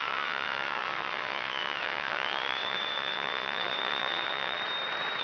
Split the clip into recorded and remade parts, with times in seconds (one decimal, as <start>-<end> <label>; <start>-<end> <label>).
0.0-4.6 remade; 4.6-5.2 recorded